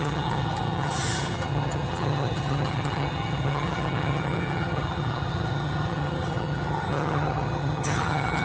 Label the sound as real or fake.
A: fake